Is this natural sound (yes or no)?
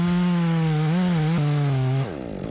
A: yes